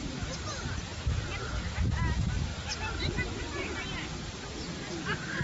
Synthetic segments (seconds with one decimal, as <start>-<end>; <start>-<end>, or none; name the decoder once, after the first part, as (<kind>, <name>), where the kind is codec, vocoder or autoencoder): none